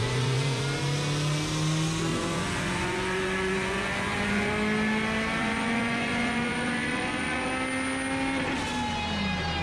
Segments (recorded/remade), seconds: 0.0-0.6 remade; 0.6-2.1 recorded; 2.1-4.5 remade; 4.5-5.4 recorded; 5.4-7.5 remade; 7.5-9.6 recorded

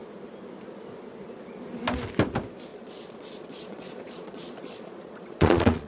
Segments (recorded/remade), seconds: 0.0-2.7 recorded; 2.7-5.9 remade

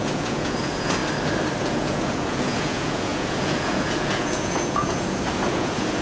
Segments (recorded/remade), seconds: 0.0-1.0 remade; 1.0-1.6 recorded; 1.6-6.0 remade

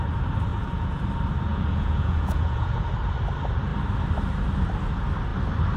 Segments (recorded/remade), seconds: 0.0-0.5 recorded; 0.5-1.0 remade; 1.0-1.5 recorded; 1.5-2.9 remade; 2.9-5.8 recorded

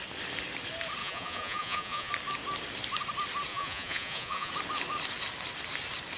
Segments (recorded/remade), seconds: 0.0-1.0 recorded; 1.0-2.1 remade; 2.1-3.5 recorded; 3.5-4.5 remade; 4.5-6.2 recorded